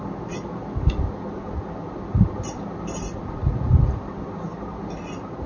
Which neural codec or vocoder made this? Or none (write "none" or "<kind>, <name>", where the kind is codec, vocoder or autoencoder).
none